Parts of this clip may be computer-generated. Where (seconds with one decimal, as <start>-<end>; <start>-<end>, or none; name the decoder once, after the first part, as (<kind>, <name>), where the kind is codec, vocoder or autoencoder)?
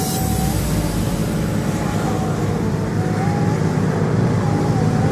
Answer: none